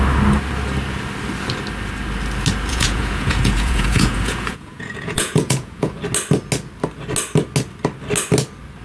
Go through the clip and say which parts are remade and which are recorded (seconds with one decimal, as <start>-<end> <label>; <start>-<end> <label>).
0.0-2.7 recorded; 2.7-6.0 remade; 6.0-8.8 recorded